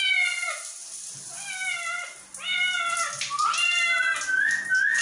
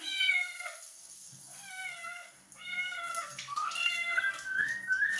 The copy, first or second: second